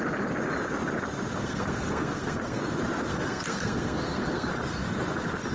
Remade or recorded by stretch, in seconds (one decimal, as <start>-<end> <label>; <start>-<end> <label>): 0.0-1.4 recorded; 1.4-2.6 remade; 2.6-3.1 recorded; 3.1-4.5 remade; 4.5-5.5 recorded